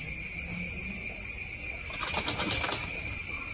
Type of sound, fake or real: real